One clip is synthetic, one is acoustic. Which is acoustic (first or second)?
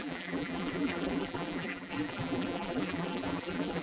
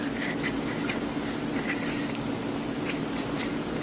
second